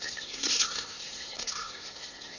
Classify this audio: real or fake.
fake